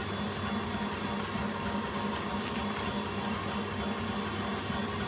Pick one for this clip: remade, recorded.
recorded